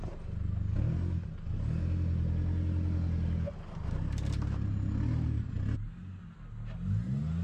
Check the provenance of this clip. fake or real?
real